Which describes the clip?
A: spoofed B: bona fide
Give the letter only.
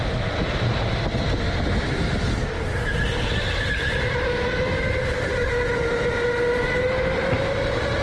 B